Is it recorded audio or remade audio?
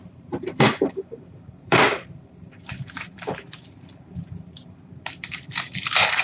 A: remade